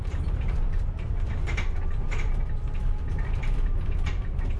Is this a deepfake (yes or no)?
yes